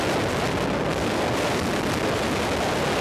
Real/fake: real